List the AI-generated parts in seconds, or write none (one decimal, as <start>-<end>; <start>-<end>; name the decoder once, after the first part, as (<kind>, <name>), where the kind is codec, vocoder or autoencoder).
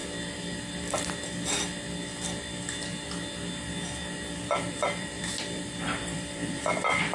4.3-7.1 (vocoder, BigVGAN v2)